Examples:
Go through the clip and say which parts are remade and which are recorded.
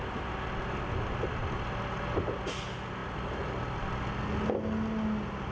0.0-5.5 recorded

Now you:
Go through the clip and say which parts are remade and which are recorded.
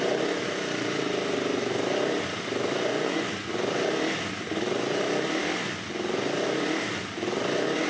0.0-2.9 recorded; 2.9-3.5 remade; 3.5-7.9 recorded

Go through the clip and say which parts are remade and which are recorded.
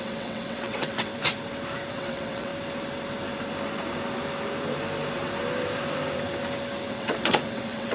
0.0-1.1 remade; 1.1-1.9 recorded; 1.9-2.5 remade; 2.5-6.9 recorded; 6.9-7.9 remade